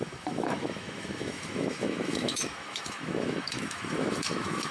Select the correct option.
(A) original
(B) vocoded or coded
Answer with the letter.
B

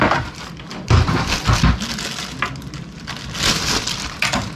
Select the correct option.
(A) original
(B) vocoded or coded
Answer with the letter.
A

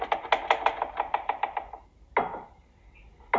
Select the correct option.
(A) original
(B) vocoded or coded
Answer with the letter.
A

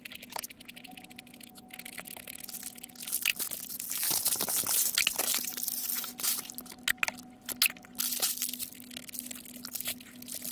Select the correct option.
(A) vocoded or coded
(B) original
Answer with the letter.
B